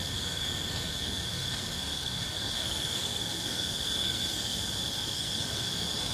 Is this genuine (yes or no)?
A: no